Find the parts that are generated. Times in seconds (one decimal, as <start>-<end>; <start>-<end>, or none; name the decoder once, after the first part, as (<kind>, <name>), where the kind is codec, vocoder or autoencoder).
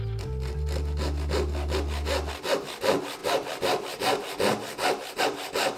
none